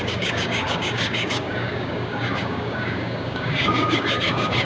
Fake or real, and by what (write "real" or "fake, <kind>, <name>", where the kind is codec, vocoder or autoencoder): fake, codec, DAC